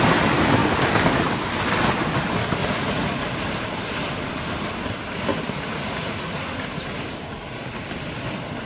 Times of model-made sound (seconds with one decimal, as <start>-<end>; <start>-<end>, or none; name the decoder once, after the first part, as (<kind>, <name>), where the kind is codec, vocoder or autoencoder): 2.6-3.2 (vocoder, Vocos); 5.3-6.5